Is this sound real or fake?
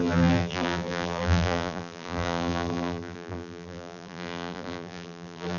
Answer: fake